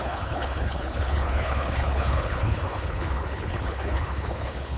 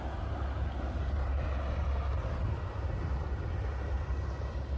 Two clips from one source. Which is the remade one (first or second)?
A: first